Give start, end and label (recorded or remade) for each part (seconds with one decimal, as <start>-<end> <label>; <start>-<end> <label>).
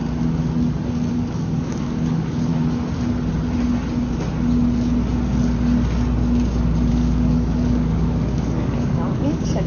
0.0-1.1 recorded; 1.1-2.5 remade; 2.5-6.9 recorded; 6.9-9.7 remade